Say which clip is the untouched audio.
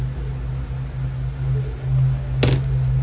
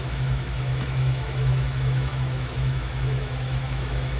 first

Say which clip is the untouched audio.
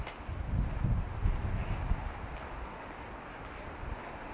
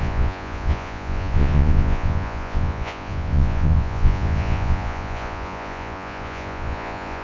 first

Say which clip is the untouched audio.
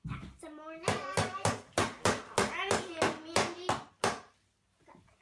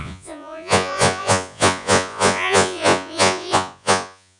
first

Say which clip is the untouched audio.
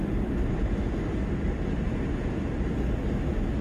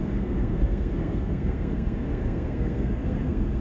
first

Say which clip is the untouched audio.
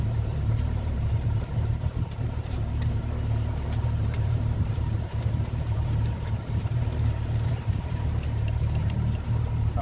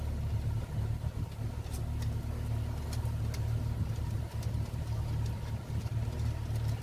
second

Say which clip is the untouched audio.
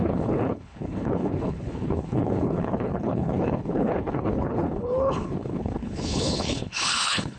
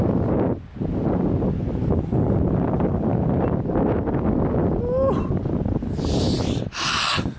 second